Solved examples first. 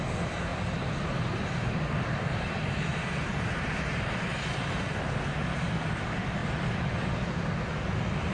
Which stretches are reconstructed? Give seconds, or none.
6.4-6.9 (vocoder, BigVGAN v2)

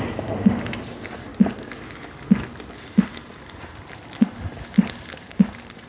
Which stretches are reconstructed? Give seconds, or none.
0.0-1.3 (vocoder, BigVGAN v2); 3.9-5.9

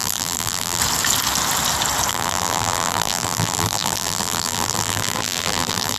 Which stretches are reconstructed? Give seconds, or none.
0.0-0.8 (vocoder, BigVGAN v2); 2.1-6.0